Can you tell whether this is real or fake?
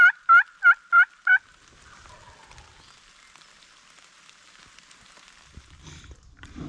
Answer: real